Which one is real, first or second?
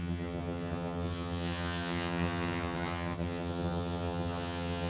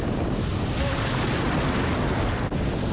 second